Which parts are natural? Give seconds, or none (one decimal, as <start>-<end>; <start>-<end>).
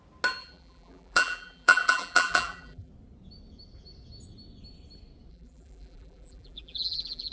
0.0-0.4; 2.9-5.3